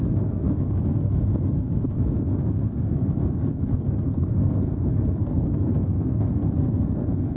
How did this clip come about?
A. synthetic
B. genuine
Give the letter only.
A